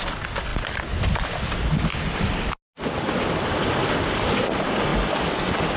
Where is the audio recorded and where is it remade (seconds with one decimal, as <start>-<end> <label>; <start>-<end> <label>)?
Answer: 0.0-5.8 recorded